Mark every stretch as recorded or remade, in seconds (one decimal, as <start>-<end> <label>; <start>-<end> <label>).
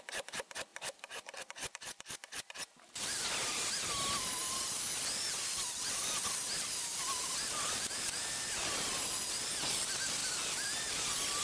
0.0-0.7 recorded; 0.7-2.9 remade; 2.9-4.4 recorded; 4.4-8.1 remade; 8.1-11.4 recorded